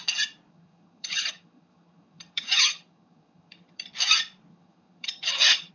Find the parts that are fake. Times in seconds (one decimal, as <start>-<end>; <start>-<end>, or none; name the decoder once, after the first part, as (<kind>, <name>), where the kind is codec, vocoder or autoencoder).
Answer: 0.5-3.9 (vocoder, HiFi-GAN); 4.5-5.7